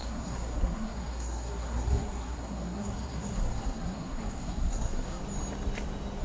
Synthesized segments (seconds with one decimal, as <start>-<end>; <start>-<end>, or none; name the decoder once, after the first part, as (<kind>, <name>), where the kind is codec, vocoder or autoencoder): 0.0-5.2 (codec, SNAC)